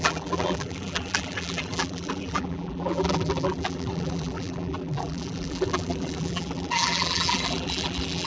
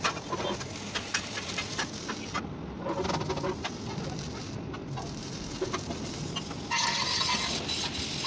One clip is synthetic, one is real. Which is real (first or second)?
second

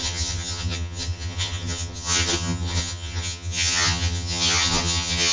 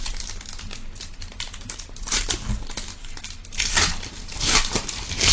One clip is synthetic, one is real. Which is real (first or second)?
second